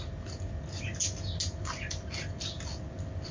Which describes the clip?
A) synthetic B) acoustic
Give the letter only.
B